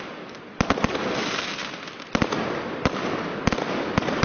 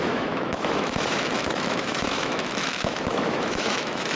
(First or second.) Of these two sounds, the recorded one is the first